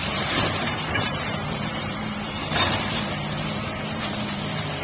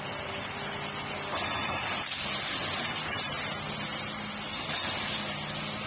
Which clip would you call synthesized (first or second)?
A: first